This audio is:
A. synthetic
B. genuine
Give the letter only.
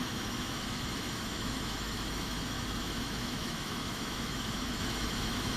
A